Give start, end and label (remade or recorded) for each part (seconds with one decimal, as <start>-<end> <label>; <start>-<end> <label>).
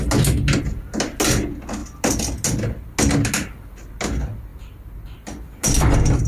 0.0-6.3 recorded